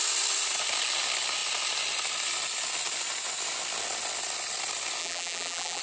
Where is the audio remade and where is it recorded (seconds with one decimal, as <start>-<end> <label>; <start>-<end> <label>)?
0.0-5.0 recorded; 5.0-5.8 remade